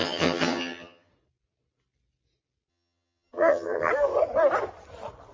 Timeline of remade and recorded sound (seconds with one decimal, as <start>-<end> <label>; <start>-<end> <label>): 0.0-1.1 remade; 1.1-2.7 recorded; 2.7-3.9 remade; 3.9-5.3 recorded